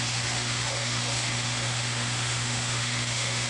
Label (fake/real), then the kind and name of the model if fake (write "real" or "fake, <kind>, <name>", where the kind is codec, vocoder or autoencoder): fake, autoencoder, DAC-VAE